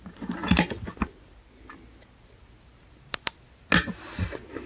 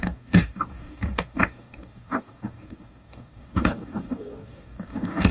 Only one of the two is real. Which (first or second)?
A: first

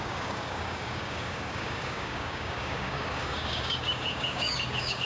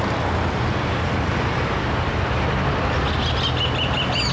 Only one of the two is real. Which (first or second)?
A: second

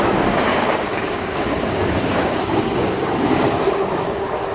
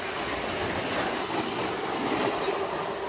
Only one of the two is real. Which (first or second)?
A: second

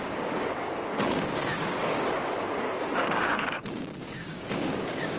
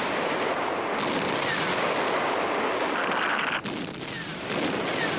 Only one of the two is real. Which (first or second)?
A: second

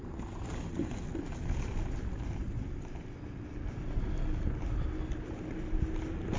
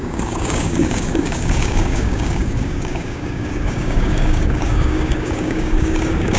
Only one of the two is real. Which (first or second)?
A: first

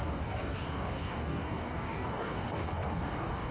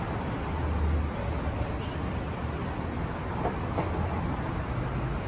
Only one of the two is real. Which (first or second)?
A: second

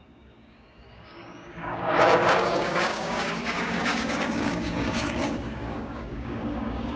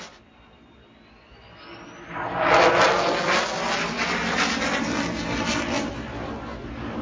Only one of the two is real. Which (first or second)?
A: second